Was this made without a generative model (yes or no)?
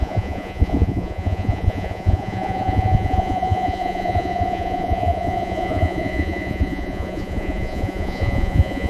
no